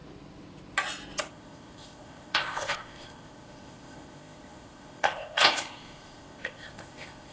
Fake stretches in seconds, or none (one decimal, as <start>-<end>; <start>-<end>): 1.3-7.3